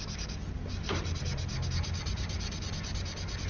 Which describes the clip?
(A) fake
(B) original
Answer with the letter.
B